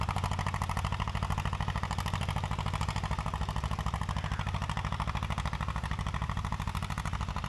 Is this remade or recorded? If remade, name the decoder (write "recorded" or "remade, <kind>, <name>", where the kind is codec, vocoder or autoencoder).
recorded